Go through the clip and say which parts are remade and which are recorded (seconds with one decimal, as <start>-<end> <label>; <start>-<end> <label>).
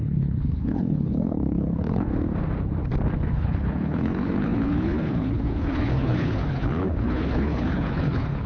0.0-2.1 remade; 2.1-3.3 recorded; 3.3-8.5 remade